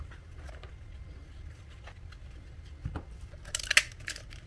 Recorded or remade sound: recorded